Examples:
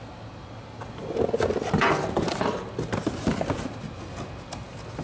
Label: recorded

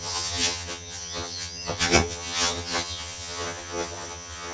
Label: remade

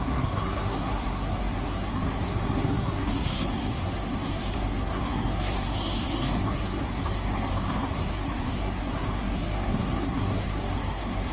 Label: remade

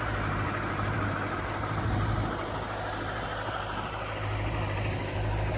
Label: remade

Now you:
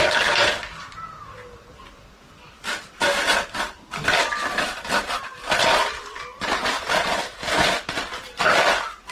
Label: recorded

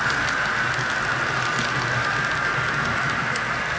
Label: recorded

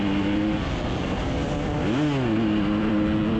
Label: recorded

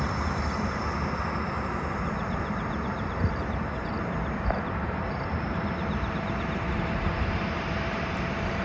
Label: remade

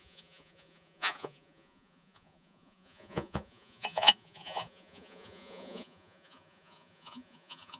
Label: remade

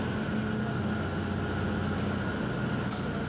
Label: recorded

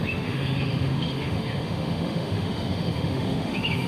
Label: remade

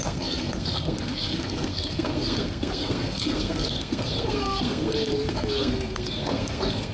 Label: remade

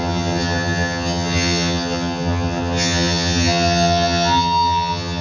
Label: remade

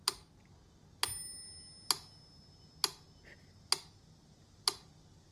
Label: recorded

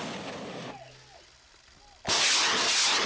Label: recorded